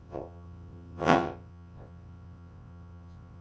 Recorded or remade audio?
remade